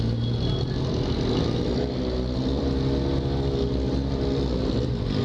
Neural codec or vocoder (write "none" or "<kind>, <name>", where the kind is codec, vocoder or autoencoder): none